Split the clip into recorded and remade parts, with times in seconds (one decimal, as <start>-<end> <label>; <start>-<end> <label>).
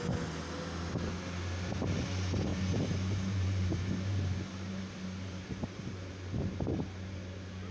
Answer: 0.0-2.5 recorded; 2.5-6.1 remade; 6.1-7.7 recorded